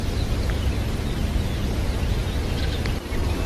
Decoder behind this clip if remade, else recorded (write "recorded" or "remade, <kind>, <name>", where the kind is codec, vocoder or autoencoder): remade, vocoder, BigVGAN v2